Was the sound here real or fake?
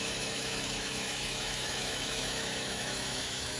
fake